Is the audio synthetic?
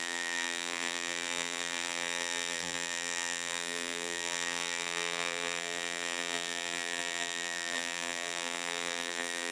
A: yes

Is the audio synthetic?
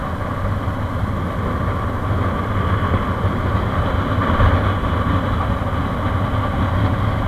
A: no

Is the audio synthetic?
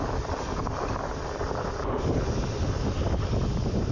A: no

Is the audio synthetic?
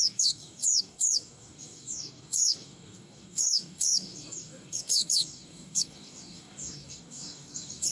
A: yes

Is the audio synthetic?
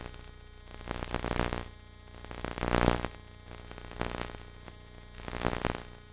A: no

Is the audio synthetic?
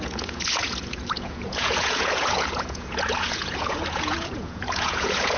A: yes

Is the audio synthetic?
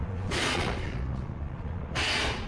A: yes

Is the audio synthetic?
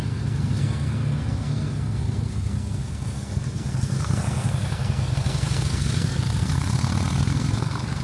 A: yes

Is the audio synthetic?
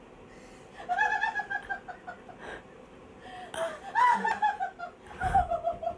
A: no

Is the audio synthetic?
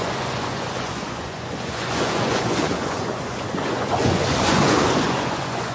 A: yes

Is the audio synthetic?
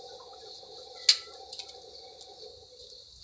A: no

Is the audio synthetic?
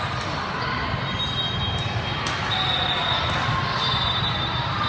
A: no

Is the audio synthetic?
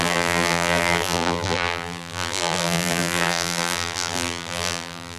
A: yes